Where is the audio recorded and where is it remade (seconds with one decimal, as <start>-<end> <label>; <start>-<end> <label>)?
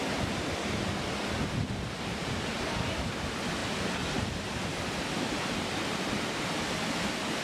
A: 0.0-7.4 recorded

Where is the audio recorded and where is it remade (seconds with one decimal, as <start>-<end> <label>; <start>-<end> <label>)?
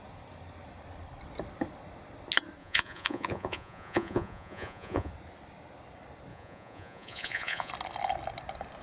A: 0.0-2.6 recorded; 2.6-5.1 remade; 5.1-6.3 recorded; 6.3-7.7 remade; 7.7-8.8 recorded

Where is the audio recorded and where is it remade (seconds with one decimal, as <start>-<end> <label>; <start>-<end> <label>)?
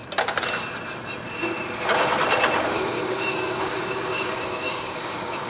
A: 0.0-2.6 recorded; 2.6-5.5 remade